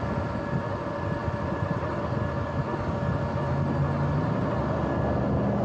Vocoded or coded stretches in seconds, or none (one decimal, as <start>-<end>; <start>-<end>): none